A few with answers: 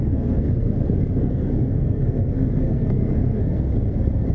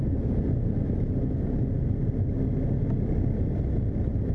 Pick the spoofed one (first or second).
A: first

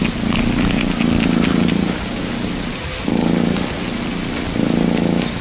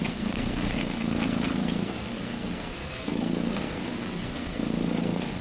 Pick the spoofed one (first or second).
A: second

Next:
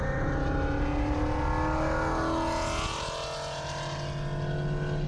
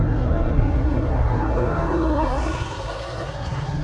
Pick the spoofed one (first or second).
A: second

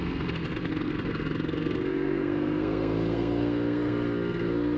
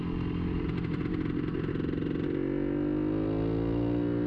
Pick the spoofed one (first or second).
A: first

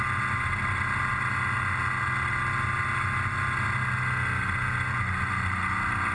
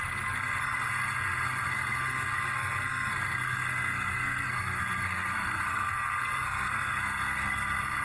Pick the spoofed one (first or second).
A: second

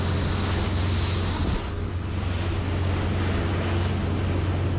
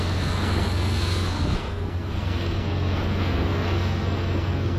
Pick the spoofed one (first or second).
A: second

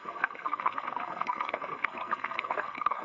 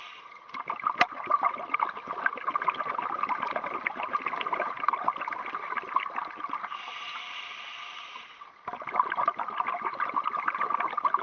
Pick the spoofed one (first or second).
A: first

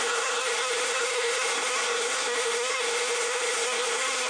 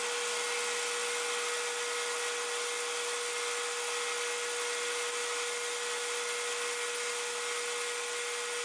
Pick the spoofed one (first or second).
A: first